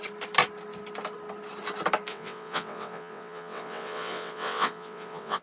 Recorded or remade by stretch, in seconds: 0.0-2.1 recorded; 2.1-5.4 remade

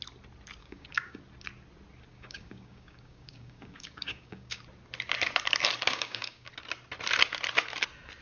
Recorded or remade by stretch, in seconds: 0.0-0.6 recorded; 0.6-1.2 remade; 1.2-2.1 recorded; 2.1-4.6 remade; 4.6-5.9 recorded; 5.9-6.5 remade; 6.5-8.2 recorded